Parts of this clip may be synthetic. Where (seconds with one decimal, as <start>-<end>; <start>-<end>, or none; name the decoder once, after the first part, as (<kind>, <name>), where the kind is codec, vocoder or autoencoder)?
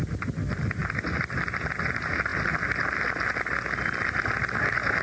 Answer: none